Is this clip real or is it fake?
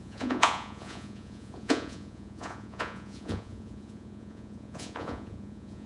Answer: fake